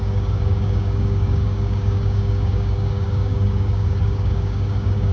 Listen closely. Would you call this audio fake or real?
fake